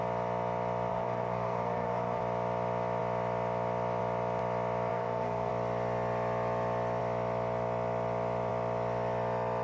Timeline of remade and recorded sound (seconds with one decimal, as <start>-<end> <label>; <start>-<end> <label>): 0.0-0.9 recorded; 0.9-2.2 remade; 2.2-4.9 recorded; 4.9-5.5 remade; 5.5-9.6 recorded